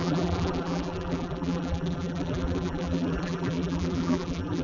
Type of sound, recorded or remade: remade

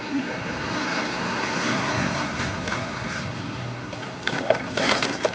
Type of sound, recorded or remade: remade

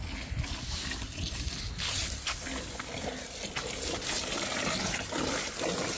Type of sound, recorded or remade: recorded